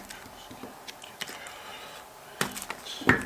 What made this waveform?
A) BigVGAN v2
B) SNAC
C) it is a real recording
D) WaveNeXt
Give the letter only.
C